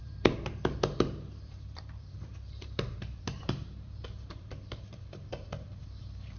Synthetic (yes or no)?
yes